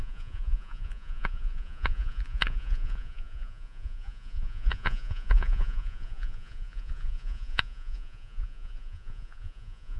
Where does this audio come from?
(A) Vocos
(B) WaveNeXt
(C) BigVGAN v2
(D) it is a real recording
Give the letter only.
A